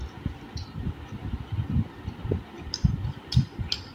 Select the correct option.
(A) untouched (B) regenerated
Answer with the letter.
A